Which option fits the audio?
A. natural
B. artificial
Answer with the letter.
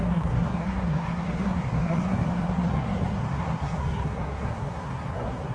B